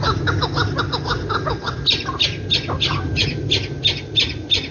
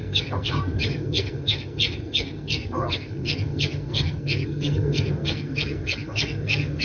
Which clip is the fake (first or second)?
second